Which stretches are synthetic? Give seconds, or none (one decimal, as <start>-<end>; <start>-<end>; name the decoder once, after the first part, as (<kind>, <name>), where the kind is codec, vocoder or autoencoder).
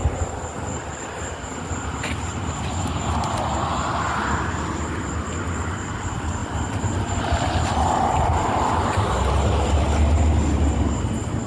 none